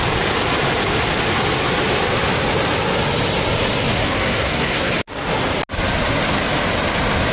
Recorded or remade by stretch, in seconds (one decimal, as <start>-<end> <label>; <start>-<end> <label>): 0.0-3.9 recorded; 3.9-4.9 remade; 4.9-7.3 recorded